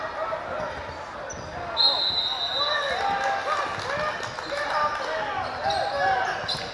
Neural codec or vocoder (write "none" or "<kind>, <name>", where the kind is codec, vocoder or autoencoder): none